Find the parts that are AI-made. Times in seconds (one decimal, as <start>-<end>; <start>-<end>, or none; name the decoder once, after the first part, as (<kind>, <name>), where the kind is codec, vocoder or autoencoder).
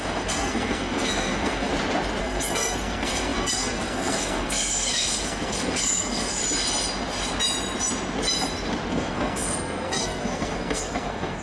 0.0-1.7 (codec, SNAC); 2.2-6.4; 8.9-11.4